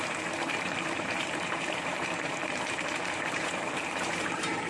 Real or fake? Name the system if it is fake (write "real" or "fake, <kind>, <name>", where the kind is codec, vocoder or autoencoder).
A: fake, vocoder, BigVGAN v2